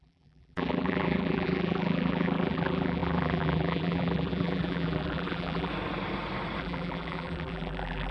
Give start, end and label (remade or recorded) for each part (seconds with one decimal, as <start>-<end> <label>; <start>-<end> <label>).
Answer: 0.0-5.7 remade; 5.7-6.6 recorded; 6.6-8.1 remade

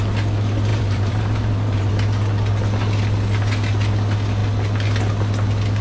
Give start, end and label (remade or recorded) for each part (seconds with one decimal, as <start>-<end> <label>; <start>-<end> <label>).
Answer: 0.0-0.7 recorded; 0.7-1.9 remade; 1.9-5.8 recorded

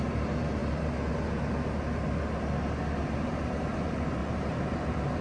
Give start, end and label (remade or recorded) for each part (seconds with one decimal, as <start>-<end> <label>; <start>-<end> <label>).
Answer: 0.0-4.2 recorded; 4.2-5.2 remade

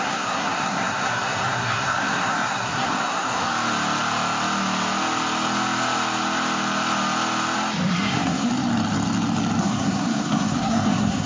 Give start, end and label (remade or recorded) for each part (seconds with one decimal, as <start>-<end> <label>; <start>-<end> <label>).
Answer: 0.0-3.5 remade; 3.5-7.9 recorded; 7.9-8.5 remade; 8.5-9.6 recorded; 9.6-11.3 remade

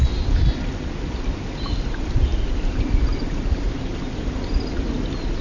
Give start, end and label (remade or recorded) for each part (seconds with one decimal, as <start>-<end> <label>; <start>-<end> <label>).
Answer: 0.0-5.4 recorded

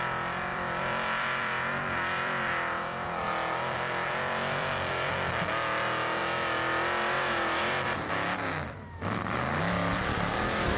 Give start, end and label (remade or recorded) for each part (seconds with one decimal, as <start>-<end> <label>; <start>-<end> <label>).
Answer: 0.0-0.5 recorded; 0.5-5.1 remade; 5.1-10.8 recorded

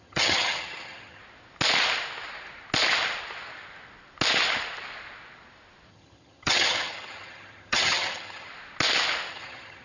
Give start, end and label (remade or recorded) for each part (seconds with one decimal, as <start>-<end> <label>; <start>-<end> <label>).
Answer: 0.0-1.2 remade; 1.2-5.9 recorded; 5.9-8.5 remade; 8.5-9.3 recorded; 9.3-9.8 remade

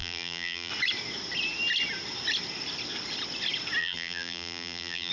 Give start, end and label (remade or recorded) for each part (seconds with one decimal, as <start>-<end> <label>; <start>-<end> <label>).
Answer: 0.0-0.7 remade; 0.7-3.8 recorded; 3.8-5.1 remade